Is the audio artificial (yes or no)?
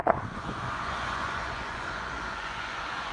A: yes